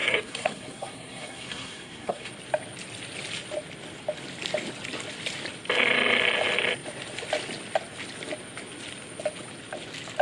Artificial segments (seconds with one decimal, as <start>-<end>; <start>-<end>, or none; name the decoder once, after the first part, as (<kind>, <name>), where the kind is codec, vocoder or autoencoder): 0.0-2.3 (codec, SNAC)